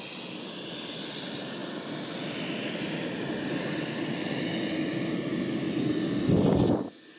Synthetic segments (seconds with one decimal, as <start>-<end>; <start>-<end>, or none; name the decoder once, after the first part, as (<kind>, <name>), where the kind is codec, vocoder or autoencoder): none

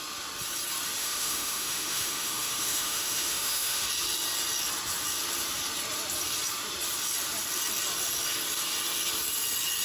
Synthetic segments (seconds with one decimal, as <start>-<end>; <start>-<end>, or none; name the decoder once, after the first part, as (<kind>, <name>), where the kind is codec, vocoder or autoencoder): 1.0-3.9 (autoencoder, DAC-VAE)

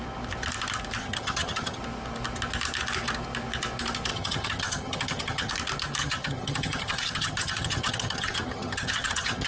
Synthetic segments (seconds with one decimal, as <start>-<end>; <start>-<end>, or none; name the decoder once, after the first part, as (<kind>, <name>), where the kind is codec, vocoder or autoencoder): 1.0-1.8 (vocoder, HiFi-GAN); 4.1-5.5; 6.0-9.5

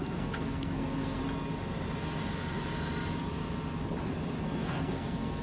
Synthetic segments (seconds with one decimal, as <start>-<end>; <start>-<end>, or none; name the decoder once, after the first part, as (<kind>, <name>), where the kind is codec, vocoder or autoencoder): 0.0-1.2 (codec, SNAC); 4.4-5.4

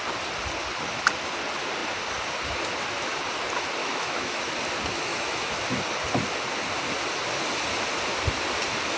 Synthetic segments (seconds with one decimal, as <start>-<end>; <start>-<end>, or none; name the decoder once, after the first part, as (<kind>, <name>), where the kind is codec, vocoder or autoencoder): 3.8-4.4 (autoencoder, DAC-VAE); 5.1-5.6